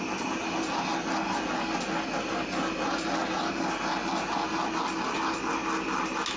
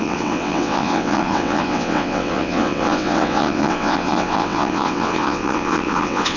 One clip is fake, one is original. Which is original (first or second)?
first